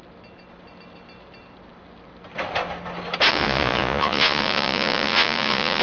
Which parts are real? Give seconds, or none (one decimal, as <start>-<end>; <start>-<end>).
0.0-3.3